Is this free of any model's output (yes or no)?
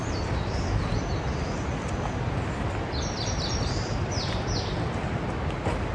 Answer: yes